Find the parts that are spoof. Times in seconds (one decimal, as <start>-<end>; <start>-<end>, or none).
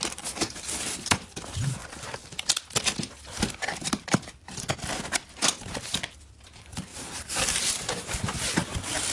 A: 6.9-7.7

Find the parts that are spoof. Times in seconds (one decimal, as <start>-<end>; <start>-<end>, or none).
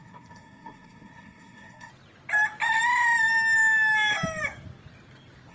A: 0.0-1.9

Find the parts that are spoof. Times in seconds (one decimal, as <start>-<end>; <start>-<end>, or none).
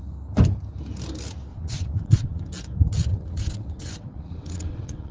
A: 1.5-2.4; 3.1-5.1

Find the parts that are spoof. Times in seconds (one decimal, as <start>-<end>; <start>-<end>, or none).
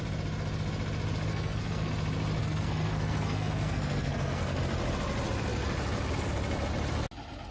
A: 1.3-1.9; 2.4-4.6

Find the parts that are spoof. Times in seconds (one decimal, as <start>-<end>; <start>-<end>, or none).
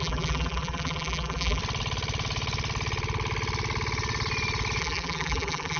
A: 0.0-1.6; 4.8-5.8